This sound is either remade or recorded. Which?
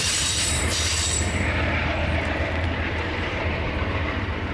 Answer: remade